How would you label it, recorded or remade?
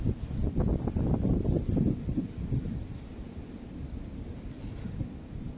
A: recorded